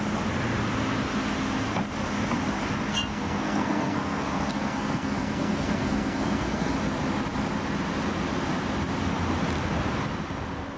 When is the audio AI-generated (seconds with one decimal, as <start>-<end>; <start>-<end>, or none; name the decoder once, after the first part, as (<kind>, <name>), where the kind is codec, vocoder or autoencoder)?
2.9-6.7 (codec, SNAC)